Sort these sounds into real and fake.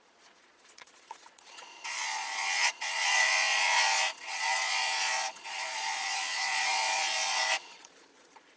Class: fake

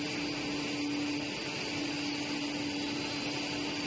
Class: real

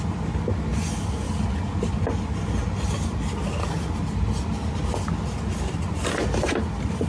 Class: real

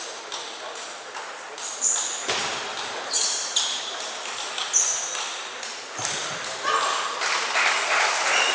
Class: real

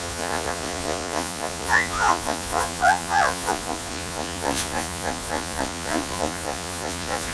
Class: fake